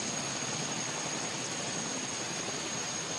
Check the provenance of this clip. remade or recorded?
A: recorded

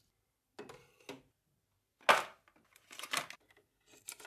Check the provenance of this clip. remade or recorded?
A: recorded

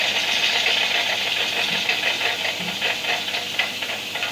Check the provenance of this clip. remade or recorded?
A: recorded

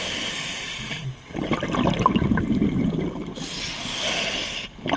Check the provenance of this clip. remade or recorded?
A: recorded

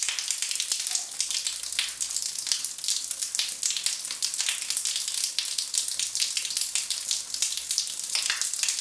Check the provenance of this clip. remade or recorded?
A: recorded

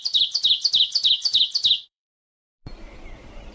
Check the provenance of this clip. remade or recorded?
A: remade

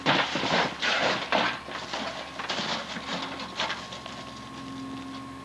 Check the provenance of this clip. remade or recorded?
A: recorded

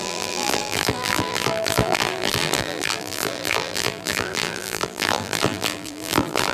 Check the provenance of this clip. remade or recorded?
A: remade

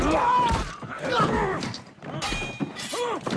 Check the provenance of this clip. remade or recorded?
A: remade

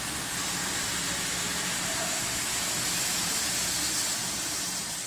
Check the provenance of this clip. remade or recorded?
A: recorded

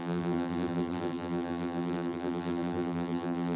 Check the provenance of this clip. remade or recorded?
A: remade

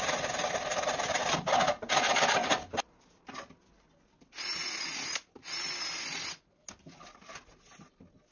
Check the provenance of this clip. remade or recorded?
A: recorded